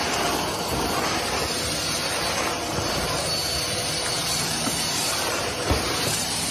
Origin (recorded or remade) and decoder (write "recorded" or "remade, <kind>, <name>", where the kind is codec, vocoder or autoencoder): recorded